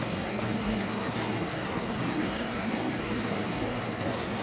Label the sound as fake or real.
fake